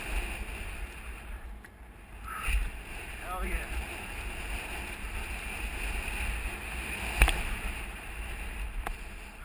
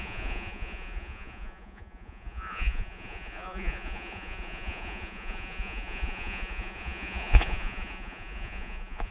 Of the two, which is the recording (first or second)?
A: first